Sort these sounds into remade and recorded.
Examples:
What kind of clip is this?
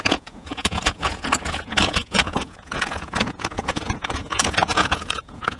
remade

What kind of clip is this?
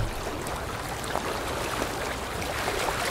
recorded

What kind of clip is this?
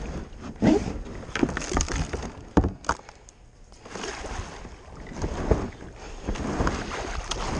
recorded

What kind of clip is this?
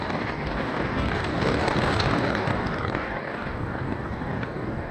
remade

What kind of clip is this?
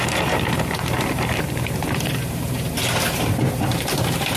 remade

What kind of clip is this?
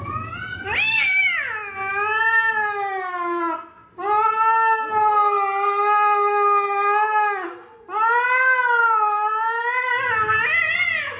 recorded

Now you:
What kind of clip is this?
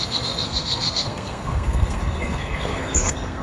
remade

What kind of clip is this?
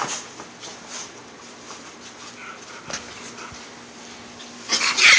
recorded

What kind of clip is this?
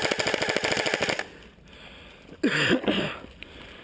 recorded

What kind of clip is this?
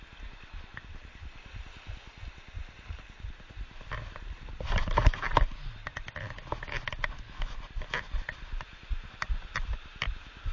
recorded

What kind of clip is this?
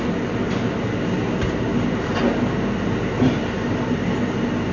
recorded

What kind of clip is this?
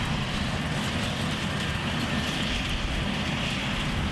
recorded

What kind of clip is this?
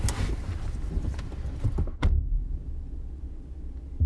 recorded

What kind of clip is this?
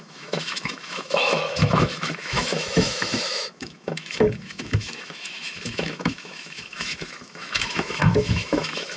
remade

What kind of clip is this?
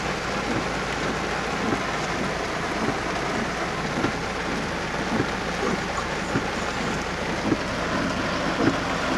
recorded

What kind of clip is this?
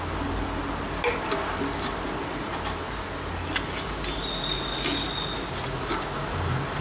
recorded